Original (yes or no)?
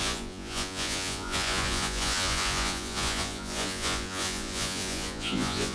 no